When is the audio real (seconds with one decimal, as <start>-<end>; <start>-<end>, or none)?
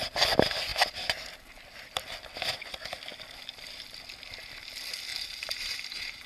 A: 0.0-5.1